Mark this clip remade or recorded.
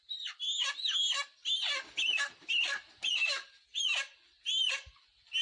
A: recorded